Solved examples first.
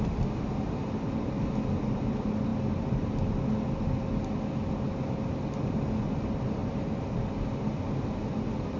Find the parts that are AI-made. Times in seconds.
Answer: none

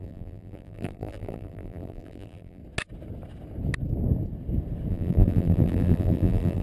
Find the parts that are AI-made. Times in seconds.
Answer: 0.0-2.6 (vocoder, BigVGAN v2); 4.9-6.6

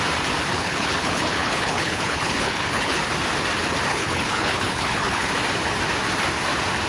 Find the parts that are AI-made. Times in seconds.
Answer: 0.5-3.0 (codec, HILCodec); 3.9-5.3